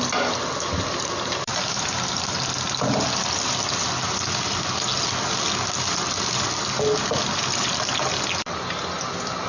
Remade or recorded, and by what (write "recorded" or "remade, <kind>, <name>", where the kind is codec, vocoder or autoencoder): recorded